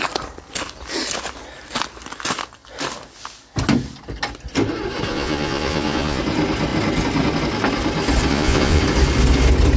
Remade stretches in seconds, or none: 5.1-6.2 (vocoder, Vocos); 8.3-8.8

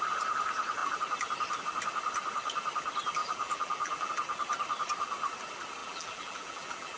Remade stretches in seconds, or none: 3.2-4.1 (vocoder, BigVGAN v2); 5.8-7.0

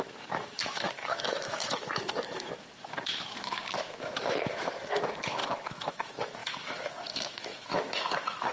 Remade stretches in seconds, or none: 0.0-8.5 (autoencoder, DAC-VAE)

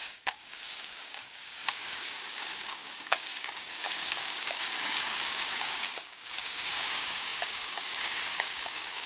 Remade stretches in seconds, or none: 0.0-9.1 (codec, DAC)

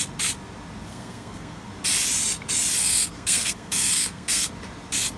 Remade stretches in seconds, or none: 0.9-1.7 (codec, SNAC); 2.8-4.5